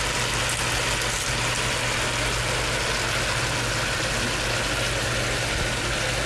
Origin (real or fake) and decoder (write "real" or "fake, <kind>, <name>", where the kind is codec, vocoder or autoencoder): real